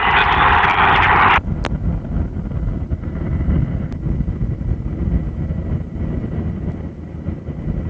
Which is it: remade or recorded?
recorded